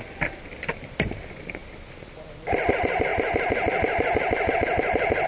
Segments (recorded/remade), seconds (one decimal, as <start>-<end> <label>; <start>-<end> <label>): 0.0-5.3 recorded